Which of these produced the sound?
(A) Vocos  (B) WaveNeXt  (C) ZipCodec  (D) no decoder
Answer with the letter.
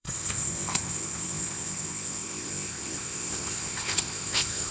C